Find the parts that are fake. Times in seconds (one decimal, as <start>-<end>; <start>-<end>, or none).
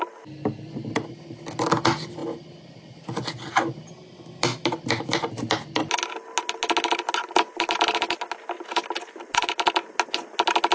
none